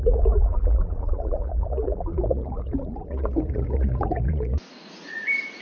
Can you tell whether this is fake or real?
fake